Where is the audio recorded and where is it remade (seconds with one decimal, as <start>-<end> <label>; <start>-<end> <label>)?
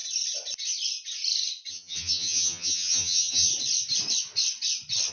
0.0-1.7 recorded; 1.7-3.5 remade; 3.5-5.1 recorded